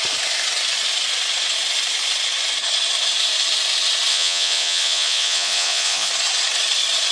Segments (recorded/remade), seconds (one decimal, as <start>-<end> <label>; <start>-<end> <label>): 0.0-4.1 recorded; 4.1-6.1 remade; 6.1-7.1 recorded